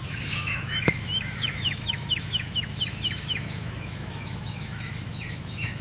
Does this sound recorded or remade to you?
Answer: remade